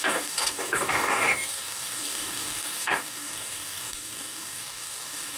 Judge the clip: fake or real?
fake